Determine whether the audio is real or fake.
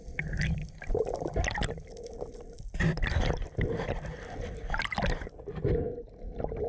real